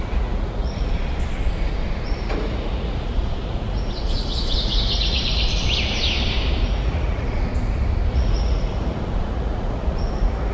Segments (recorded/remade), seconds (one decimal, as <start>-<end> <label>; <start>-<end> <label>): 0.0-0.9 remade; 0.9-2.0 recorded; 2.0-5.6 remade; 5.6-6.6 recorded; 6.6-7.5 remade; 7.5-8.1 recorded; 8.1-10.5 remade